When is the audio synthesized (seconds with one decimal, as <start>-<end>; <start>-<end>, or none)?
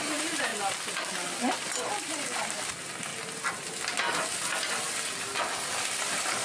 0.0-6.4